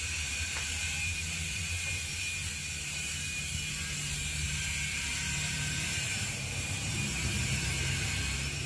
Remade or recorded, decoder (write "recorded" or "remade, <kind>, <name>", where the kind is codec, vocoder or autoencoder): remade, vocoder, BigVGAN v2